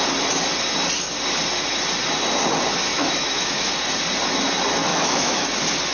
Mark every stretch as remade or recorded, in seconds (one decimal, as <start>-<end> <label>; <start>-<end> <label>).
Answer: 0.0-2.9 recorded; 2.9-3.7 remade; 3.7-4.9 recorded; 4.9-5.5 remade; 5.5-5.9 recorded